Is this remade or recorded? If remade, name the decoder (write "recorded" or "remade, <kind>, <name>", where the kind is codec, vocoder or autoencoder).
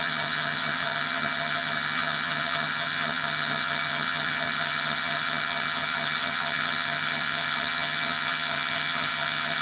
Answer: remade, vocoder, HiFi-GAN